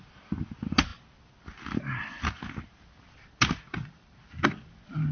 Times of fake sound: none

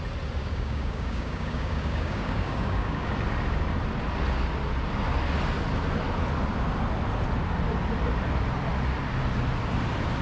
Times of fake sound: 0.4-3.1 (codec, DAC)

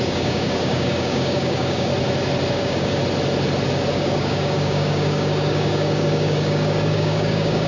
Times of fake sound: 0.0-1.9 (codec, DAC); 2.5-3.0; 3.9-7.7